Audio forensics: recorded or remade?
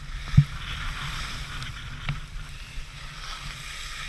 recorded